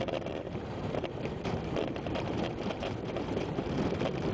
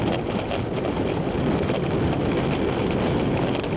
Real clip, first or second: second